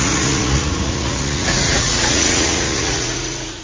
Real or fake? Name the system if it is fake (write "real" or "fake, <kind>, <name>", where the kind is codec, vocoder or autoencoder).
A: fake, vocoder, Vocos